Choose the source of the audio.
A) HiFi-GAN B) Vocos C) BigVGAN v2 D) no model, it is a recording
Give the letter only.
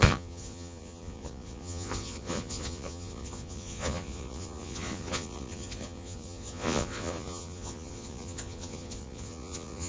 B